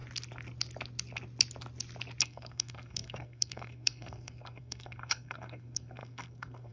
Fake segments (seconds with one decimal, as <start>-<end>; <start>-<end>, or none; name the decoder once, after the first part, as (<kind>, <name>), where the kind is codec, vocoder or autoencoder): 2.2-6.7 (codec, SNAC)